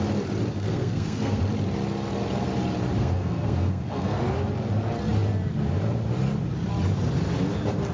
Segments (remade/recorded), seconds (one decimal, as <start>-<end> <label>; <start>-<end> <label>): 0.0-0.5 recorded; 0.5-1.4 remade; 1.4-3.0 recorded; 3.0-4.2 remade; 4.2-7.9 recorded